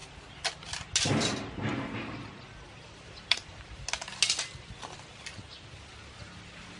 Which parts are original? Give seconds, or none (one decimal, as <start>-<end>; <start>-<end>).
0.0-6.8